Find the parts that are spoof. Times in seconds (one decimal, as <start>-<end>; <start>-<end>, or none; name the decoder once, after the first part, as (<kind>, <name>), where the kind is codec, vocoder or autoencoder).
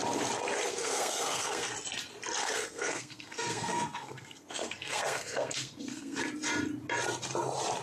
0.7-1.7 (codec, SNAC); 2.4-6.2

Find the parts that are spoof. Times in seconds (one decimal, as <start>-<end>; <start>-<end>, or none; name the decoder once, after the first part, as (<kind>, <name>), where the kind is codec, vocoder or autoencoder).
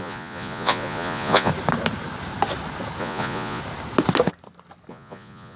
0.0-1.5 (vocoder, Vocos); 3.0-3.6; 4.9-5.6